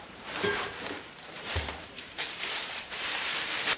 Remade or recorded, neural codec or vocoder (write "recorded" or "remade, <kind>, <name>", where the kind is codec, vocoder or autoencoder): remade, vocoder, BigVGAN v2